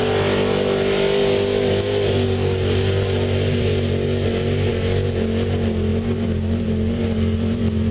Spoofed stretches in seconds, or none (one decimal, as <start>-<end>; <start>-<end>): 5.9-7.9